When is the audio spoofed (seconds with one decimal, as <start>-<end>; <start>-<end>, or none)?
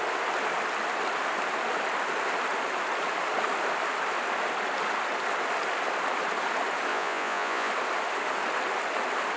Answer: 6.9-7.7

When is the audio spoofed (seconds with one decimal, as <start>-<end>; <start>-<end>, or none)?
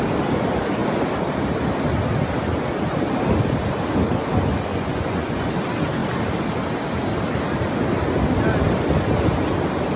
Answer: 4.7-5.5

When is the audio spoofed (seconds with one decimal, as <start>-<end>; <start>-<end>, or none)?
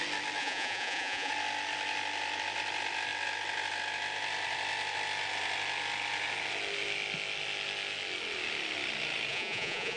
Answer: 0.4-1.3; 9.3-10.0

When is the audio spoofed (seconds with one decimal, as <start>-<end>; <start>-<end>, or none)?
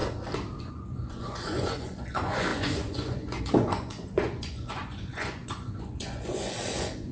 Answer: 0.6-7.1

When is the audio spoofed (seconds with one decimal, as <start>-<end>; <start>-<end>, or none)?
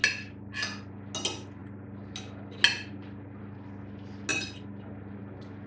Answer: none